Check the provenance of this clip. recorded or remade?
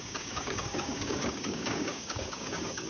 remade